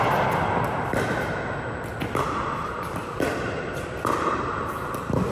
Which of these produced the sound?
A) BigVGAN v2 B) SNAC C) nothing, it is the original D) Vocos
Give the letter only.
C